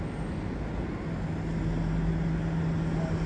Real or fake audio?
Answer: real